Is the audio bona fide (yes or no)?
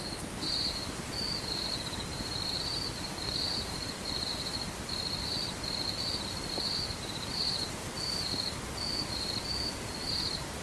no